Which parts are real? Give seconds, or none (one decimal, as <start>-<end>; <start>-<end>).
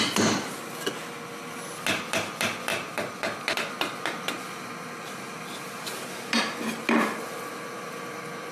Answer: 0.0-2.7; 3.3-8.5